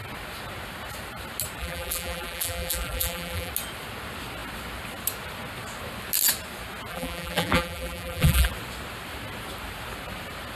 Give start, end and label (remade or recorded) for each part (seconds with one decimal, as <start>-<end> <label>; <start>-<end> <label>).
0.0-1.6 recorded; 1.6-3.5 remade; 3.5-6.9 recorded; 6.9-8.5 remade; 8.5-10.6 recorded